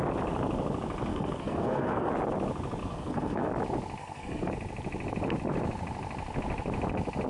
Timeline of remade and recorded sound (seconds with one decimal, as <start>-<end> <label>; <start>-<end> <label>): 0.0-1.1 recorded; 1.1-2.1 remade; 2.1-2.8 recorded; 2.8-3.5 remade; 3.5-4.0 recorded; 4.0-4.5 remade; 4.5-7.3 recorded